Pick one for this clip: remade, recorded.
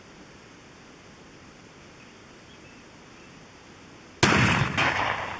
recorded